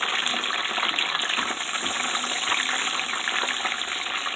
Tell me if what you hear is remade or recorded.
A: recorded